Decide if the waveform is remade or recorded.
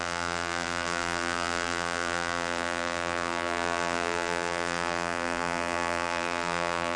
remade